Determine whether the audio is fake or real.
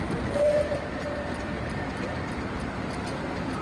fake